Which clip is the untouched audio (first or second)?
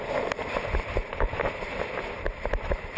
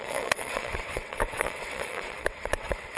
first